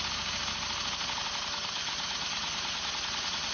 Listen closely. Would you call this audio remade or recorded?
recorded